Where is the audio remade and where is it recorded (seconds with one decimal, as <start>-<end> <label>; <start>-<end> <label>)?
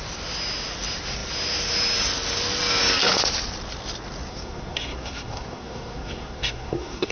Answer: 0.0-4.3 recorded; 4.3-7.1 remade